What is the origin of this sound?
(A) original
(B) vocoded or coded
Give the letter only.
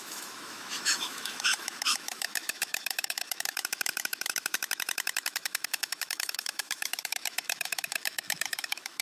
B